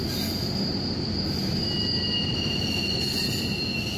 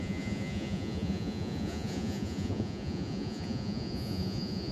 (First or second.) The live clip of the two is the first